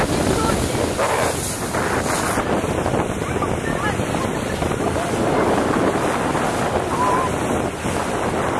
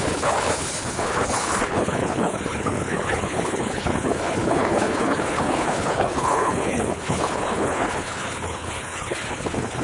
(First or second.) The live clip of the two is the first